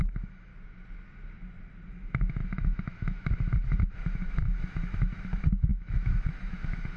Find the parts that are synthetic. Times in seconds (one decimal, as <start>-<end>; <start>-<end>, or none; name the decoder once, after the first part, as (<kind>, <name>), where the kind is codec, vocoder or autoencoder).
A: 0.0-0.5 (autoencoder, DAC-VAE); 1.9-7.0